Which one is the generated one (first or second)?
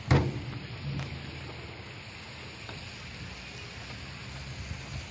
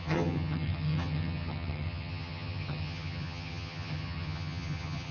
second